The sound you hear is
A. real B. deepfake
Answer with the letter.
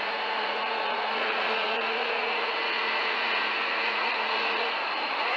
B